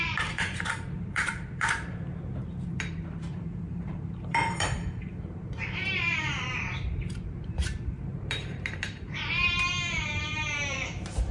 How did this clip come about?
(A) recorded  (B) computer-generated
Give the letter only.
B